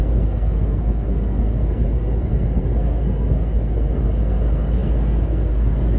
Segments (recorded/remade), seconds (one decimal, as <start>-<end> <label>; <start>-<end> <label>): 0.0-6.0 remade